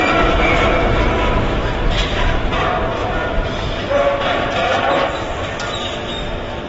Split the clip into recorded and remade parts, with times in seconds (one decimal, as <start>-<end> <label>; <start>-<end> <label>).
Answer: 0.0-3.0 recorded; 3.0-4.0 remade; 4.0-6.7 recorded